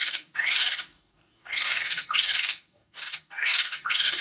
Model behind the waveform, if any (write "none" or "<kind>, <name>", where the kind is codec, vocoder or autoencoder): codec, DAC